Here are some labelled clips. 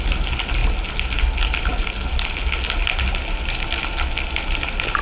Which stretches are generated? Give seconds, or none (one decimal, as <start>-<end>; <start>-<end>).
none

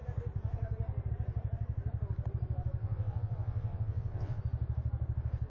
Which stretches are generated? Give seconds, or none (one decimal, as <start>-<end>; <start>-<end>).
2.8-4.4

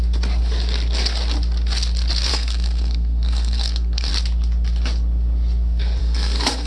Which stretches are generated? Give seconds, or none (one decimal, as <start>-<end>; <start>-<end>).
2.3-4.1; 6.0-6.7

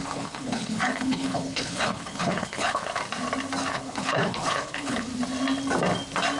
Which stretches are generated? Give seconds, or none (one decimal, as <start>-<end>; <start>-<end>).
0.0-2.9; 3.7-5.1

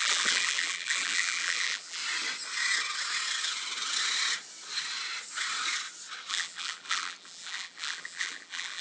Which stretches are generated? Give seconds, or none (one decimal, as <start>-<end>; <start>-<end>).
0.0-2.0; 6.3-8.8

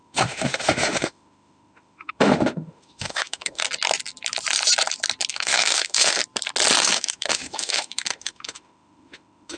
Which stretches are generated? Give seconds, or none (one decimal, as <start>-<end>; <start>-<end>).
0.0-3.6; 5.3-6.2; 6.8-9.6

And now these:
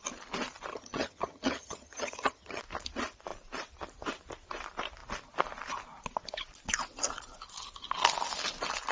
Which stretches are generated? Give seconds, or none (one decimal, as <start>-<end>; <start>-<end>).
0.7-2.6